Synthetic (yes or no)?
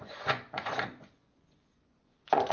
yes